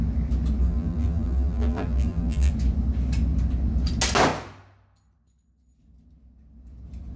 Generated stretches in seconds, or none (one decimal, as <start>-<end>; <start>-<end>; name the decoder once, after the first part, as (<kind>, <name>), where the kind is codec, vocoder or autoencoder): 0.6-2.5 (vocoder, BigVGAN v2)